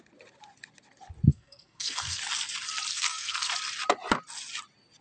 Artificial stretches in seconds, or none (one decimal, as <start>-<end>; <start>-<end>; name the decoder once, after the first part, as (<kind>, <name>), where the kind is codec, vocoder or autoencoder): 1.3-2.2 (codec, SNAC); 2.9-3.5